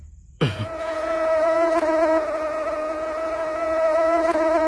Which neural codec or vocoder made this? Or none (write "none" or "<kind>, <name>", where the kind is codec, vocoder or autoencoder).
vocoder, Vocos